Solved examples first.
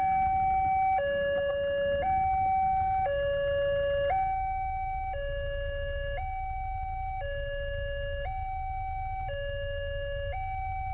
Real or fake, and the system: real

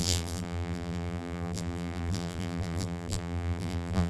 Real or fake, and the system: fake, vocoder, BigVGAN v2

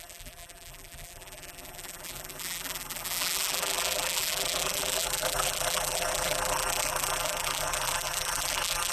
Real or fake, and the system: fake, vocoder, BigVGAN v2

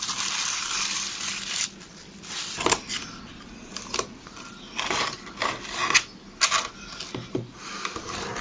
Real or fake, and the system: real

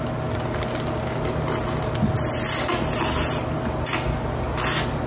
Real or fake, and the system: real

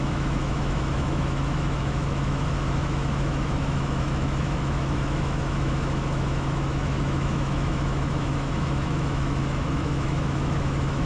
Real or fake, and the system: fake, autoencoder, DAC-VAE